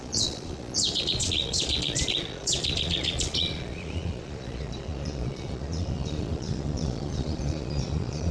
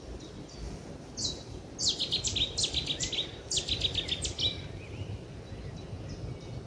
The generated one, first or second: first